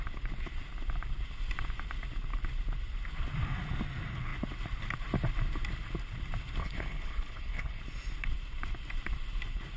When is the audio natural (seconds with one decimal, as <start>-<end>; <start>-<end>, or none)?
0.0-6.6; 7.8-9.8